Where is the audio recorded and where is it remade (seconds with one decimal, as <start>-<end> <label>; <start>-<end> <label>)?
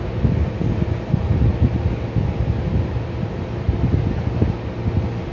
0.0-5.3 recorded